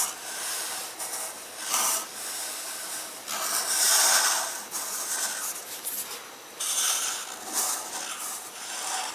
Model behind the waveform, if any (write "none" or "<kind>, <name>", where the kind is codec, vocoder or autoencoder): none